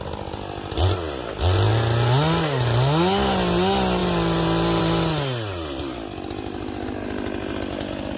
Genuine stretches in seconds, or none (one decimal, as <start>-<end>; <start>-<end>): 0.0-8.2